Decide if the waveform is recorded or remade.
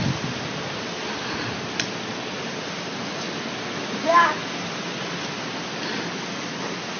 recorded